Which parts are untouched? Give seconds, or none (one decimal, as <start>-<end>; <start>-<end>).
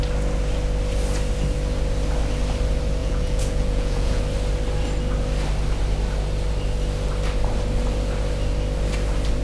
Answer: 0.0-3.0; 4.2-9.4